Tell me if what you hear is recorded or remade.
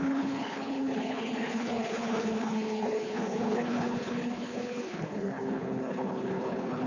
remade